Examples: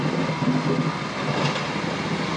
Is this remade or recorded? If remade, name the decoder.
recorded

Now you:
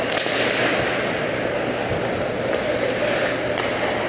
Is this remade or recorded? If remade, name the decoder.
recorded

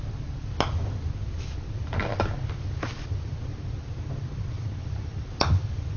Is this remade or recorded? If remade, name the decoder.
recorded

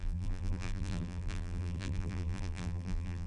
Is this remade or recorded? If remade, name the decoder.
remade, vocoder, BigVGAN v2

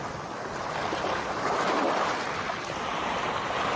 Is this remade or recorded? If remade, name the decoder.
recorded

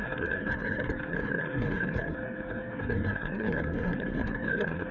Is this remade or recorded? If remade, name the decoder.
remade, codec, SNAC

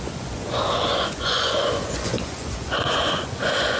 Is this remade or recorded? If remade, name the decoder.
remade, vocoder, Vocos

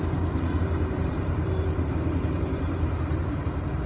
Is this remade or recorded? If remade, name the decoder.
remade, vocoder, BigVGAN v2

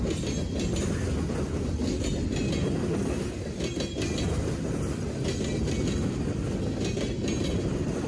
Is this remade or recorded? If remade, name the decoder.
recorded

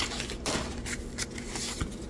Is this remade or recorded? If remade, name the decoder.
recorded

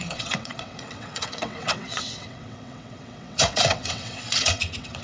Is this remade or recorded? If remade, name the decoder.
remade, vocoder, WaveNeXt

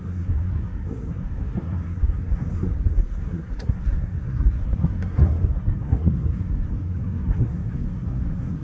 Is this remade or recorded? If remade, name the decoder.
remade, codec, SNAC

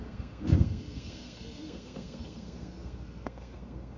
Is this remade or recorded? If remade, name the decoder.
remade, codec, SNAC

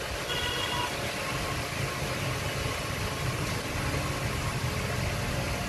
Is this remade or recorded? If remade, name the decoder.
recorded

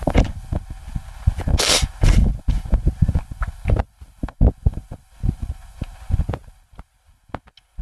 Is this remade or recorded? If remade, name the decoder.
recorded